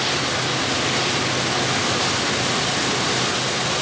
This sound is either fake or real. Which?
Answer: real